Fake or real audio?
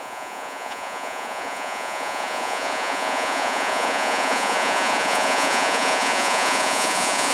fake